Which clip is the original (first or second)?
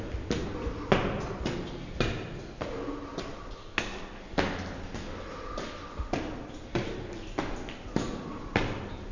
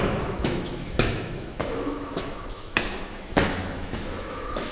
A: first